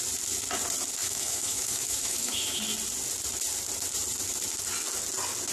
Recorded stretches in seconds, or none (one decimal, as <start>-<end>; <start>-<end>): 0.0-1.0; 2.6-5.5